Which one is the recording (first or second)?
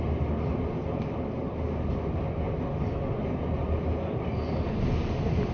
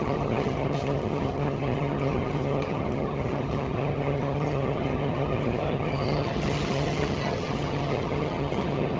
first